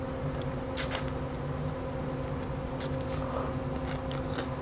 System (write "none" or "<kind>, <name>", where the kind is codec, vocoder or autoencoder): none